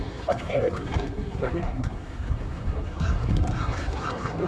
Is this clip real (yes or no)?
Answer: no